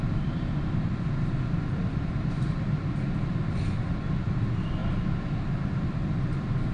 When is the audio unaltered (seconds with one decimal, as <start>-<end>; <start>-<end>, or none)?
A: 0.0-6.7